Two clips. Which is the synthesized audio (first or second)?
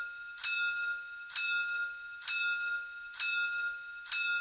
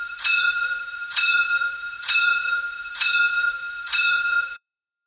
second